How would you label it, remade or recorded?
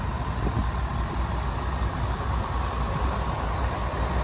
recorded